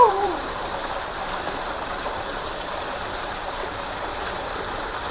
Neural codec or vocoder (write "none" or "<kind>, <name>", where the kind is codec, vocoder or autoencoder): vocoder, BigVGAN v2